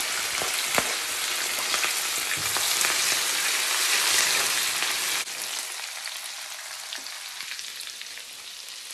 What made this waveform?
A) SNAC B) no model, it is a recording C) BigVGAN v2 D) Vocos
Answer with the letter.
B